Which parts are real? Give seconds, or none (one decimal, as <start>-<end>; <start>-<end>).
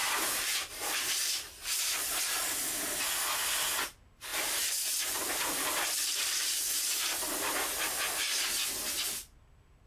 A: 2.2-4.3; 7.0-9.9